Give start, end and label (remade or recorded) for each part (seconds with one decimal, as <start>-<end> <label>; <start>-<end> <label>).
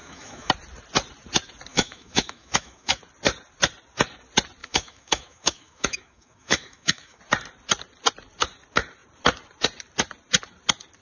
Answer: 0.0-0.5 remade; 0.5-1.7 recorded; 1.7-3.0 remade; 3.0-4.6 recorded; 4.6-7.2 remade; 7.2-11.0 recorded